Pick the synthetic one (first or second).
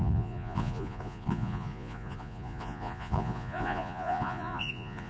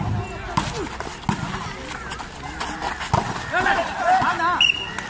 first